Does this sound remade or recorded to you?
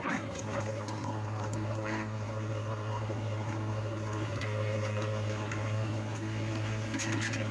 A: remade